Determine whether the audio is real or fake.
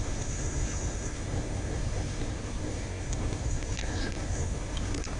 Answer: fake